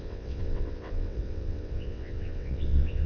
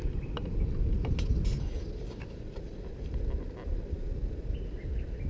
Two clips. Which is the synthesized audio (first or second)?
first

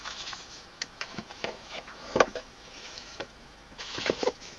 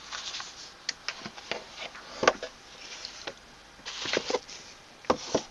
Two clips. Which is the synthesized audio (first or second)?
first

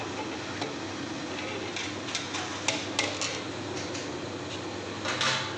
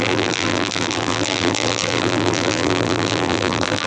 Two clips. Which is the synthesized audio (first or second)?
second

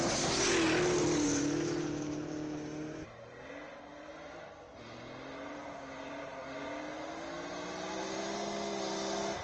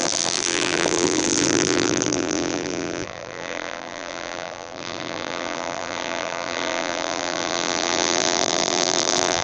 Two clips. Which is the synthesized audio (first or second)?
second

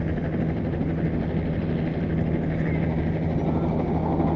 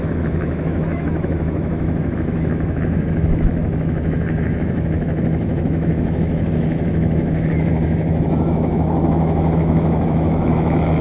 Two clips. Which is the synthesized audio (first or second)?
second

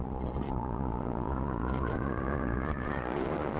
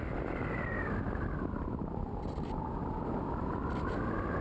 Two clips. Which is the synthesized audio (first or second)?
first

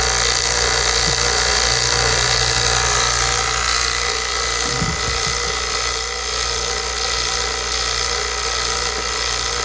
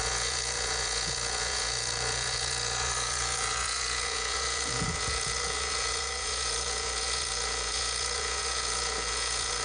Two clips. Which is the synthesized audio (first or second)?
second